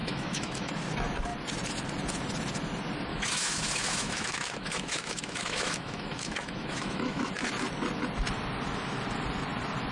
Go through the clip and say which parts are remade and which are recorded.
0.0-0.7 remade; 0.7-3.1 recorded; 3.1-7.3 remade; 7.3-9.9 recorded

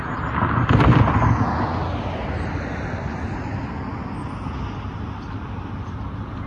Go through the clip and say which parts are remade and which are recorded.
0.0-6.5 recorded

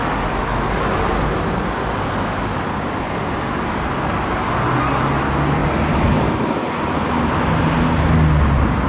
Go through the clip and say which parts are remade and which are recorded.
0.0-8.9 recorded

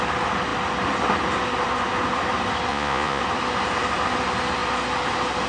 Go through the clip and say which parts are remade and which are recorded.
0.0-2.7 recorded; 2.7-3.2 remade; 3.2-5.5 recorded

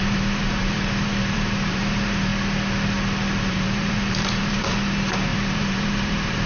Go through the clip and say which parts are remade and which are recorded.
0.0-2.3 remade; 2.3-3.4 recorded; 3.4-6.5 remade

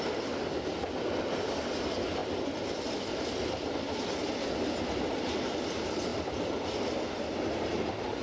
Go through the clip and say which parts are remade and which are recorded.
0.0-8.2 recorded